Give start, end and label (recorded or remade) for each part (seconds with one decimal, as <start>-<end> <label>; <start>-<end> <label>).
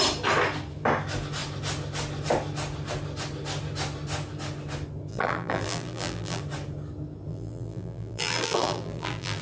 0.0-5.1 recorded; 5.1-6.4 remade; 6.4-7.3 recorded; 7.3-9.4 remade